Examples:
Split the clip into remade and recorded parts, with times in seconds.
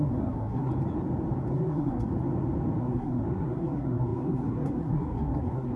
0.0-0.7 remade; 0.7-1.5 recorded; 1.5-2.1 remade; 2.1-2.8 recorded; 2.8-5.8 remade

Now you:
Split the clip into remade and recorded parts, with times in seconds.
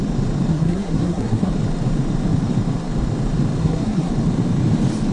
0.0-0.5 recorded; 0.5-1.5 remade; 1.5-3.6 recorded; 3.6-4.1 remade; 4.1-5.1 recorded